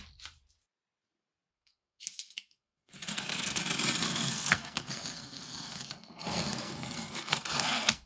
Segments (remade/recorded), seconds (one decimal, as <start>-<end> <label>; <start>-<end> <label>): 0.0-1.5 recorded; 1.5-3.6 remade; 3.6-4.0 recorded; 4.0-8.1 remade